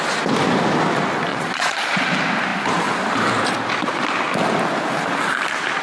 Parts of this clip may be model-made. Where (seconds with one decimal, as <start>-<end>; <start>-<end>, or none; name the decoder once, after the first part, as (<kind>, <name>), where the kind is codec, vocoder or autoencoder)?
1.3-2.1 (vocoder, Vocos)